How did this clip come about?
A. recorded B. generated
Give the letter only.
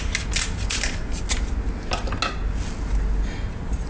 A